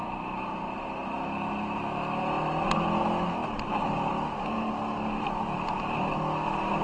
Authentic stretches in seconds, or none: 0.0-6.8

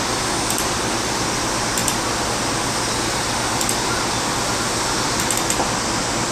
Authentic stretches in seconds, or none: 0.0-6.3